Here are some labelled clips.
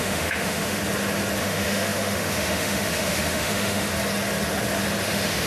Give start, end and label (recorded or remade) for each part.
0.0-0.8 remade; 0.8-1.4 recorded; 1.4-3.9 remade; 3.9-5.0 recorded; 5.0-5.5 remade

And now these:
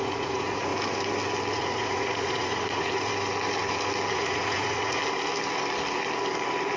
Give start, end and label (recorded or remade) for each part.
0.0-0.7 remade; 0.7-1.5 recorded; 1.5-3.1 remade; 3.1-4.1 recorded; 4.1-5.0 remade; 5.0-6.8 recorded